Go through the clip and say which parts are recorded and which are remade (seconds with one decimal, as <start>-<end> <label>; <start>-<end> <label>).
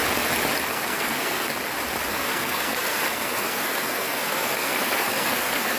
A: 0.0-0.7 recorded; 0.7-1.5 remade; 1.5-2.1 recorded; 2.1-5.8 remade